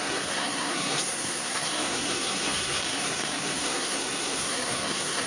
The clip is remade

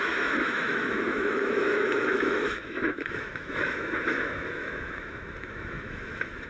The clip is remade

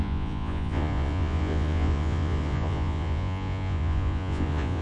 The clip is remade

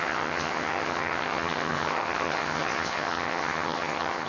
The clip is remade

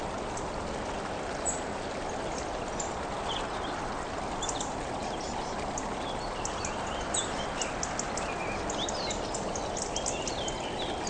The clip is recorded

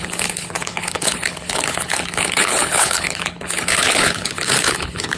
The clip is remade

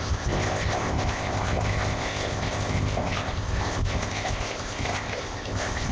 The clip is remade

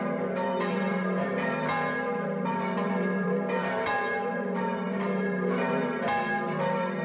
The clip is remade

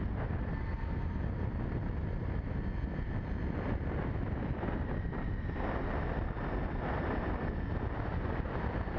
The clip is recorded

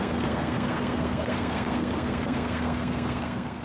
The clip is remade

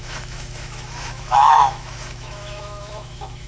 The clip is remade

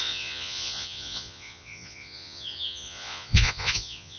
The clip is remade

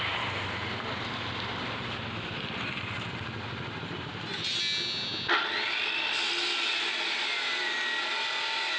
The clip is recorded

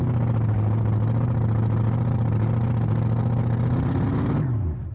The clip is recorded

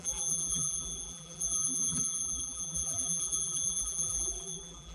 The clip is remade